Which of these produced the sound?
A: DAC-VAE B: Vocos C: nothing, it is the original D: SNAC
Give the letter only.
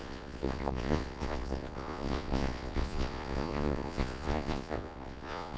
B